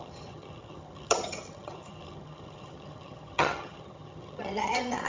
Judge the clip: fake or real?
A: fake